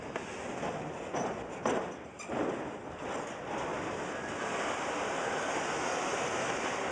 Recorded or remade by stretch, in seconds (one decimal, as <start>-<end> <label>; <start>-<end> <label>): 0.0-1.7 recorded; 1.7-2.5 remade; 2.5-3.7 recorded; 3.7-6.2 remade; 6.2-6.9 recorded